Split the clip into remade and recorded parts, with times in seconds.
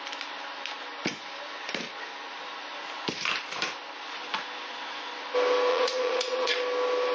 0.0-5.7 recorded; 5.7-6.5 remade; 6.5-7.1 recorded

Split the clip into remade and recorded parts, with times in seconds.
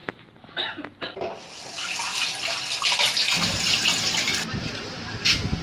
0.0-2.1 remade; 2.1-5.6 recorded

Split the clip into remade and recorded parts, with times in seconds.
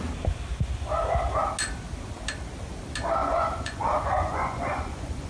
0.0-3.2 recorded; 3.2-5.3 remade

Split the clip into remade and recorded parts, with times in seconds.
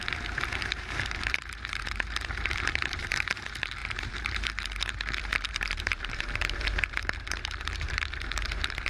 0.0-8.9 remade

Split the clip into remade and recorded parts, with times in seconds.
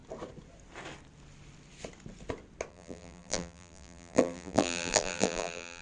0.0-2.7 recorded; 2.7-5.8 remade